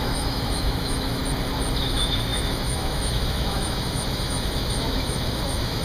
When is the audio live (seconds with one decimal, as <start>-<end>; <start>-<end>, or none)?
1.2-1.8